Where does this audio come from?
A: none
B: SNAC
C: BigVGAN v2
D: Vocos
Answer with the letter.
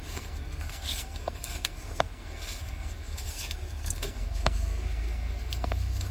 B